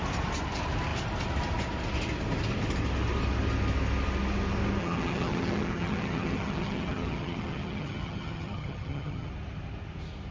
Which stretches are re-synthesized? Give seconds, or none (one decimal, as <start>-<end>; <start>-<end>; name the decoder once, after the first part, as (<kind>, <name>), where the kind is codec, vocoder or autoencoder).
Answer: 4.8-9.3 (vocoder, HiFi-GAN)